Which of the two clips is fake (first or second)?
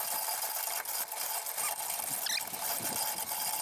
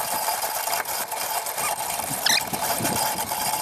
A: second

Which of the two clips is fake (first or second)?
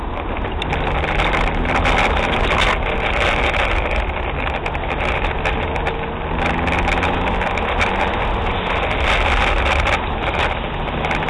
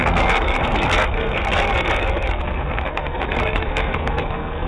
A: second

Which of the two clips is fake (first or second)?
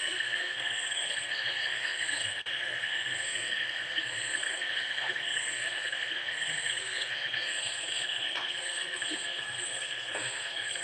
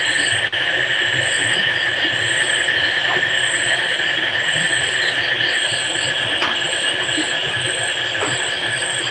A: first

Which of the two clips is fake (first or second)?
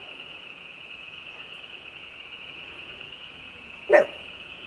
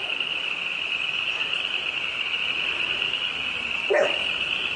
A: first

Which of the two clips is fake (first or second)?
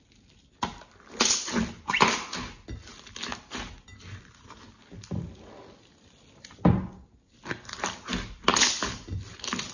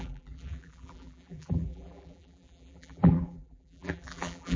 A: second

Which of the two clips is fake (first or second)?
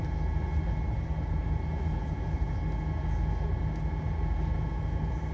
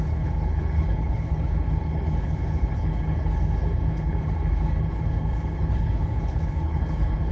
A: second